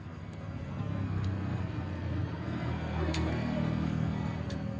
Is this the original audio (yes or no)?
no